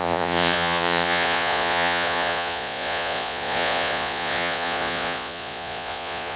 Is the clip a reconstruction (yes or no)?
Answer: yes